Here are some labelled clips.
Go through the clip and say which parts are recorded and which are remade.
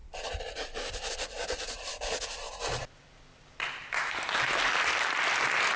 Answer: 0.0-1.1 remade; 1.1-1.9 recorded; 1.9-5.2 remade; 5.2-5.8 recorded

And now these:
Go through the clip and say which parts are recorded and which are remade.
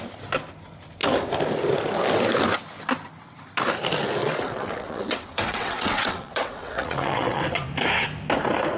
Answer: 0.0-4.2 recorded; 4.2-7.4 remade; 7.4-8.8 recorded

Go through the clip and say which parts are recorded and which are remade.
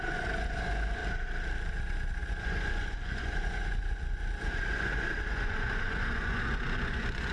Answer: 0.0-1.0 remade; 1.0-1.6 recorded; 1.6-7.3 remade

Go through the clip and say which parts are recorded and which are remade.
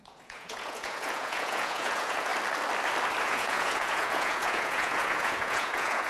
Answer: 0.0-2.3 remade; 2.3-3.2 recorded; 3.2-6.1 remade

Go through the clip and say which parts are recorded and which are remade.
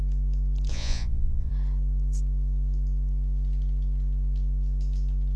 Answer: 0.0-0.7 recorded; 0.7-1.5 remade; 1.5-5.4 recorded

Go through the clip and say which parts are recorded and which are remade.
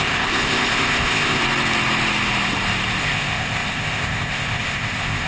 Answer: 0.0-1.4 remade; 1.4-3.0 recorded; 3.0-5.3 remade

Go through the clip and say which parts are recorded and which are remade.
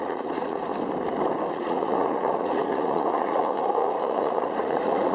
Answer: 0.0-0.7 remade; 0.7-1.5 recorded; 1.5-5.1 remade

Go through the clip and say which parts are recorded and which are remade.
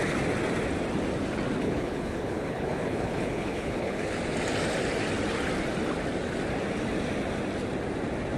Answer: 0.0-1.6 recorded; 1.6-4.2 remade; 4.2-8.4 recorded